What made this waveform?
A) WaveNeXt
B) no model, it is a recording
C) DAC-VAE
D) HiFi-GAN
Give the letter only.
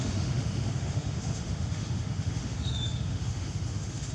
C